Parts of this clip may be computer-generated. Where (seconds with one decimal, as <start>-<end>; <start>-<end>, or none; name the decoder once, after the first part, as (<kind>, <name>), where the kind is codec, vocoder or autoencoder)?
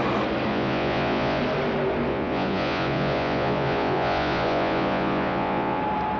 0.5-1.4 (vocoder, Vocos); 2.1-5.8